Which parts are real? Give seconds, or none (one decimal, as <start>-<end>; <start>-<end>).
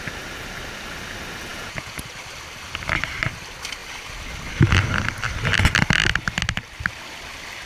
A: 0.0-1.5; 2.0-7.7